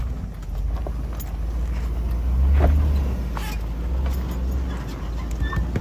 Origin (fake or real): real